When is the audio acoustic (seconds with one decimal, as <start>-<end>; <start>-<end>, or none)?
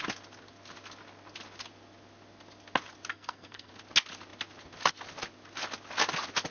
0.0-3.1; 3.7-6.5